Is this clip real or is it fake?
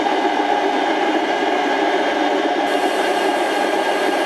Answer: fake